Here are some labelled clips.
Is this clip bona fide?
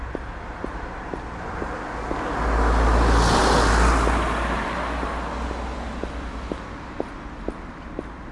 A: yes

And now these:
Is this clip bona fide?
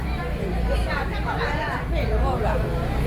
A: yes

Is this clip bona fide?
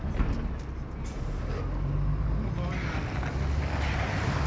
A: yes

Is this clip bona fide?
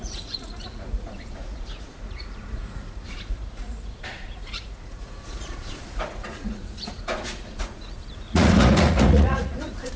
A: no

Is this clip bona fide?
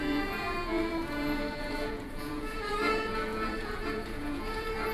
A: no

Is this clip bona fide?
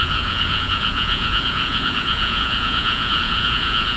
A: no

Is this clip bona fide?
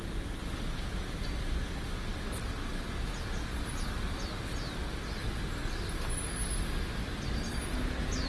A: yes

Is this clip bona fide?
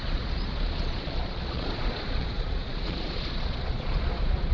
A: no